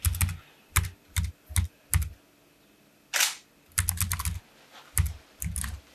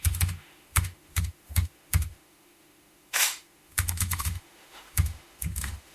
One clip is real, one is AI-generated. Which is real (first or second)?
first